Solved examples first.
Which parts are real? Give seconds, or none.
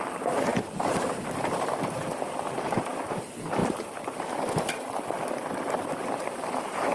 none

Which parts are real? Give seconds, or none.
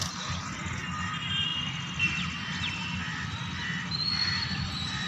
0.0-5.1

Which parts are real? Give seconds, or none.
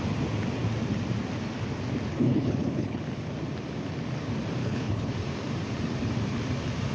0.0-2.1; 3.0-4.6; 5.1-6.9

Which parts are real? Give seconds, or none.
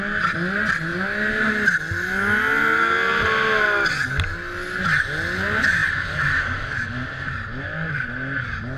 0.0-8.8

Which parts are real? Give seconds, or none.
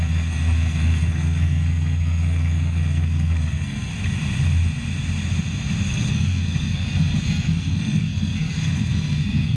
3.9-5.9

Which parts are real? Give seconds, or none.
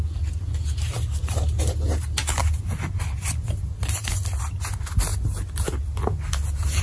0.0-6.8